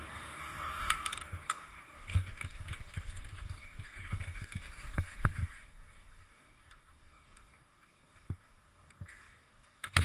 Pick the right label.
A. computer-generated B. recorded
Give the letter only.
A